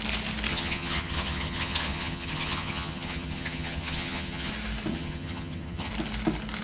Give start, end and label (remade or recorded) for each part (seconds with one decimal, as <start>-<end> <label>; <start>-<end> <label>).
0.0-0.5 recorded; 0.5-4.5 remade; 4.5-4.9 recorded; 4.9-5.9 remade; 5.9-6.6 recorded